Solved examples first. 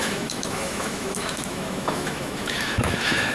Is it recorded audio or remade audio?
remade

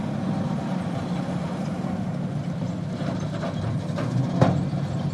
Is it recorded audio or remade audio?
recorded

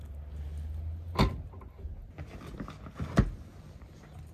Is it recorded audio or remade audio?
recorded